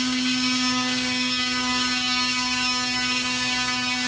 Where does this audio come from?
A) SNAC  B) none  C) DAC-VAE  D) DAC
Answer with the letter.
D